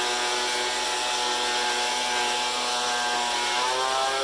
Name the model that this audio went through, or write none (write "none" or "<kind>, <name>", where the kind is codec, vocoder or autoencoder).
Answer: none